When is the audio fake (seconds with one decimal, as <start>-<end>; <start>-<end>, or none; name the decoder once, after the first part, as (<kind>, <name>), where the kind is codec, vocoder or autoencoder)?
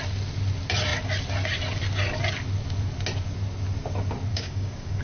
4.3-5.0 (codec, DAC)